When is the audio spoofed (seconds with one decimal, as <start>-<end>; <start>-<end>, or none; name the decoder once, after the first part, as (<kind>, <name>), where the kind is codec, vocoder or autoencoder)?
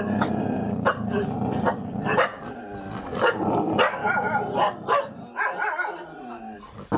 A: none